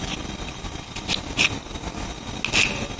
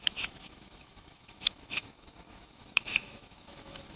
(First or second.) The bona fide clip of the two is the first